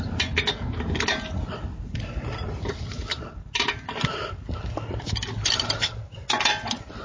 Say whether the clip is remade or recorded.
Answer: recorded